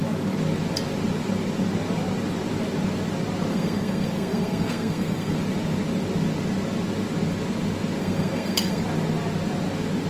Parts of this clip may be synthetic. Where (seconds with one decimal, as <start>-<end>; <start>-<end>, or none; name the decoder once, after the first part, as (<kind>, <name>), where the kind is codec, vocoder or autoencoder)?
3.5-5.4 (codec, SNAC); 8.0-8.8